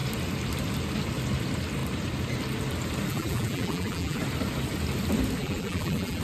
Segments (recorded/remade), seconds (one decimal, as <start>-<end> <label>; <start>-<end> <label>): 0.0-3.1 recorded; 3.1-4.2 remade; 4.2-5.4 recorded; 5.4-6.2 remade